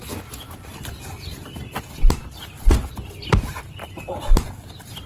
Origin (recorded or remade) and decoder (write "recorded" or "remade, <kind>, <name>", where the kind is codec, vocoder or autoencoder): recorded